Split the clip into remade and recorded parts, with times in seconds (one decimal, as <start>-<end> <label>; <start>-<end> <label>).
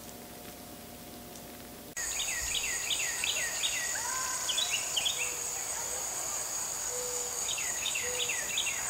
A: 0.0-6.8 recorded; 6.8-8.2 remade; 8.2-8.9 recorded